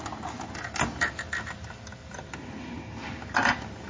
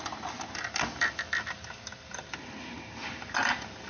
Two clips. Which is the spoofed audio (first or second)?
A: second